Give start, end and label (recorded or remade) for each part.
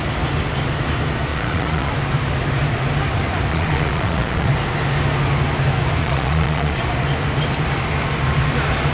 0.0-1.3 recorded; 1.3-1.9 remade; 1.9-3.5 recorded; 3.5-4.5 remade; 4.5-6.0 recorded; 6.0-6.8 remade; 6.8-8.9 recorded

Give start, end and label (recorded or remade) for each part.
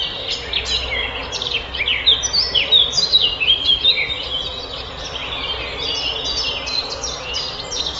0.0-8.0 recorded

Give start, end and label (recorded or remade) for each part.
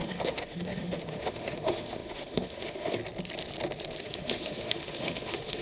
0.0-3.0 remade; 3.0-4.0 recorded; 4.0-5.6 remade